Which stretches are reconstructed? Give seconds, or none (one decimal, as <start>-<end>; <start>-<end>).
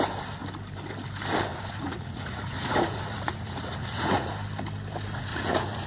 1.5-4.3; 5.3-5.9